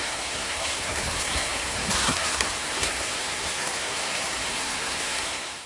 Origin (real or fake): fake